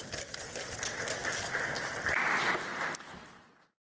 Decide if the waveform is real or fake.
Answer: real